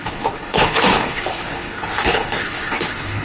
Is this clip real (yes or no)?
no